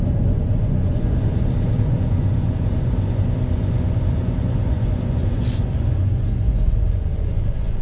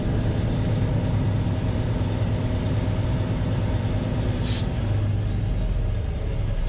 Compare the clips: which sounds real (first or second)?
second